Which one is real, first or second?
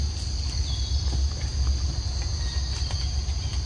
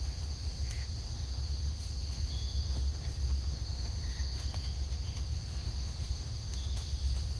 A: first